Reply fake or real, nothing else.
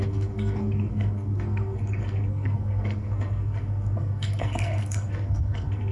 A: fake